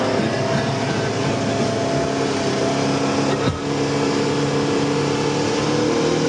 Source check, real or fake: real